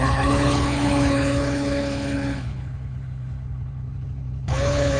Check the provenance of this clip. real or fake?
fake